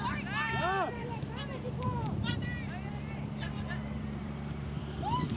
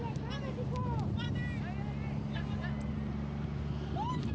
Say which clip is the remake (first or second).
first